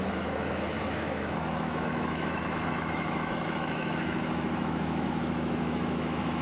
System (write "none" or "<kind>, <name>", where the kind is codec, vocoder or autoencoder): autoencoder, DAC-VAE